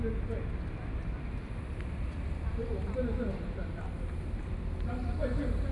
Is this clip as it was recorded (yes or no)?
yes